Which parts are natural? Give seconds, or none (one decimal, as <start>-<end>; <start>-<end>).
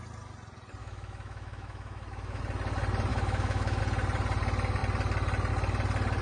0.0-0.8; 2.4-3.1; 3.8-6.2